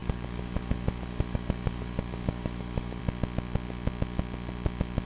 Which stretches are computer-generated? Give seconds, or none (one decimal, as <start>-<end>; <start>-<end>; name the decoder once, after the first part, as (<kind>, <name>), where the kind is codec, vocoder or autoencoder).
0.0-3.0 (codec, DAC)